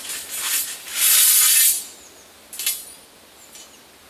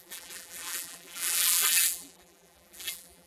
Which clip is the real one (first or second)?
first